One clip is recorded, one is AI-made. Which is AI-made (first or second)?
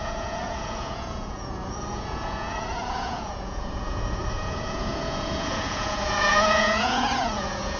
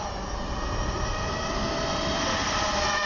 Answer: first